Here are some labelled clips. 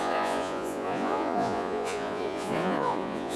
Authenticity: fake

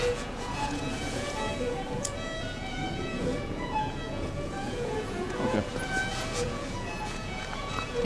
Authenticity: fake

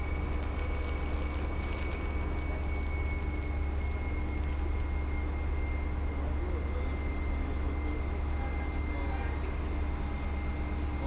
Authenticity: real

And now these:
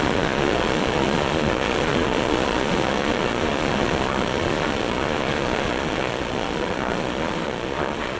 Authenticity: fake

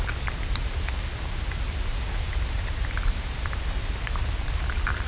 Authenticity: real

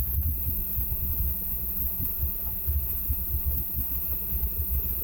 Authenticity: fake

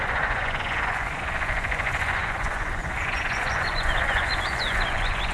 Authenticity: fake